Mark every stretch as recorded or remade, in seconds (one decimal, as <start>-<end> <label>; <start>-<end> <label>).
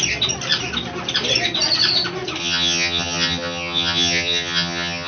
0.0-2.4 recorded; 2.4-5.1 remade